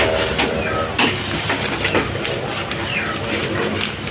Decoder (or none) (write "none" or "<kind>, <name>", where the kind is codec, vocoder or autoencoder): none